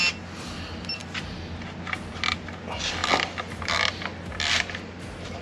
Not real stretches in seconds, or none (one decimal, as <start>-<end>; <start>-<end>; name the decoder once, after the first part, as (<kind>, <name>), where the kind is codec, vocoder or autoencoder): none